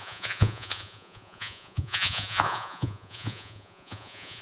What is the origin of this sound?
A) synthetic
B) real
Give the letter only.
A